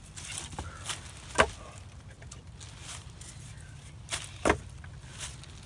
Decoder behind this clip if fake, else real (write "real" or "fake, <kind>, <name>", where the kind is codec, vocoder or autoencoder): real